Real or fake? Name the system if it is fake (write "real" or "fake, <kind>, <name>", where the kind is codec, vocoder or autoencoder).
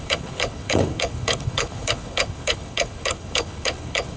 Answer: fake, codec, HILCodec